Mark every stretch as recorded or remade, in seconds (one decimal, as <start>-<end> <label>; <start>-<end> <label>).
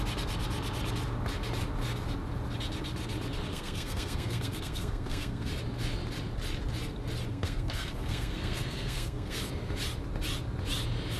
0.0-3.5 recorded; 3.5-5.5 remade; 5.5-7.3 recorded; 7.3-9.4 remade; 9.4-11.2 recorded